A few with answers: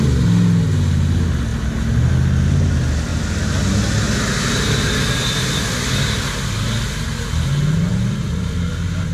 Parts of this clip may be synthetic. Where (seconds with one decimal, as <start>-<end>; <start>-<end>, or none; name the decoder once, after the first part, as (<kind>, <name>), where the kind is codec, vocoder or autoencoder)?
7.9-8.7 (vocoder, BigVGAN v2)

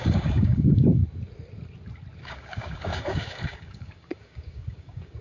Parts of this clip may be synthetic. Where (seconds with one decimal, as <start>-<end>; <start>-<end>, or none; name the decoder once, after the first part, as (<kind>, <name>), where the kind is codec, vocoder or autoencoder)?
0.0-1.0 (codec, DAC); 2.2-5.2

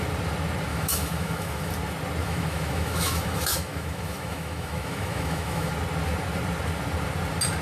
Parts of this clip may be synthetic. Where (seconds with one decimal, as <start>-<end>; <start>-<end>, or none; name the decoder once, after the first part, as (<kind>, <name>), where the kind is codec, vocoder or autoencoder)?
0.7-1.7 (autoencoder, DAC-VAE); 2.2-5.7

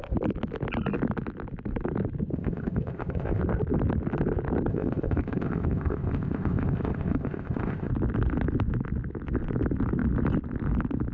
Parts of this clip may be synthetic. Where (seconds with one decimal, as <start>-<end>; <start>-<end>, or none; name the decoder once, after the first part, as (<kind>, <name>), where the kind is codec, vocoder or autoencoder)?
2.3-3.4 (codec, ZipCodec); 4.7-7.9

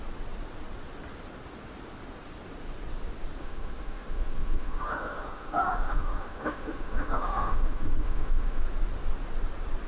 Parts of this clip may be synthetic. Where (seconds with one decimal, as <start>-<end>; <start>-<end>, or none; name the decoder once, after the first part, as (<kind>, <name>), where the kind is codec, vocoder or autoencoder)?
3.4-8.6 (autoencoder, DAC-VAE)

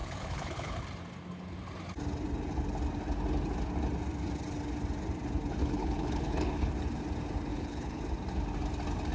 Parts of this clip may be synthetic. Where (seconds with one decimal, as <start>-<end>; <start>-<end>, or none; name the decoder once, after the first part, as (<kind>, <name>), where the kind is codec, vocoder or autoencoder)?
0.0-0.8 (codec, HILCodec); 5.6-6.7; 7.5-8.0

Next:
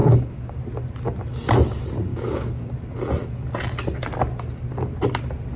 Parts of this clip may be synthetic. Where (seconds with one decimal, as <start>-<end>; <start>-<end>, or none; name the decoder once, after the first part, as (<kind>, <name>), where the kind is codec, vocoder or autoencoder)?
0.0-0.6 (codec, DAC); 2.1-2.7

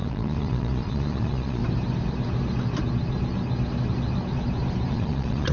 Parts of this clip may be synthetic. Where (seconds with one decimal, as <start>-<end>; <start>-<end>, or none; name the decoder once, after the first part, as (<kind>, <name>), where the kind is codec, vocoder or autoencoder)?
0.0-1.6 (vocoder, Vocos); 4.9-5.5